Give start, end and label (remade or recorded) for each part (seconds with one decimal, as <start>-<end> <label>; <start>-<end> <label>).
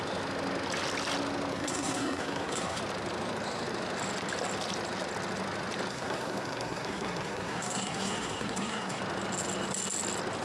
0.0-1.5 recorded; 1.5-2.8 remade; 2.8-5.9 recorded; 5.9-9.0 remade; 9.0-10.4 recorded